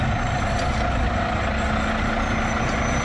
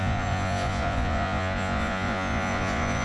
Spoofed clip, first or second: second